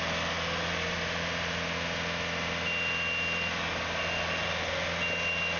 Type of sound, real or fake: real